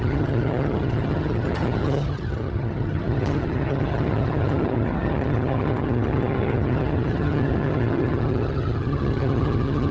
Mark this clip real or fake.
fake